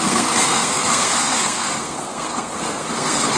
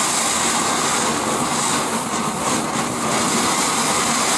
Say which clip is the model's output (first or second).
first